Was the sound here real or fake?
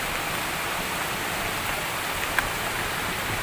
real